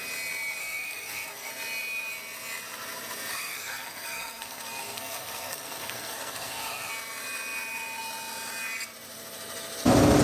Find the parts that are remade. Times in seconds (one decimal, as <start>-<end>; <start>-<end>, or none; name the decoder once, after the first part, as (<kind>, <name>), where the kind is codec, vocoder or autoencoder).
0.6-1.5 (codec, SNAC); 3.3-6.9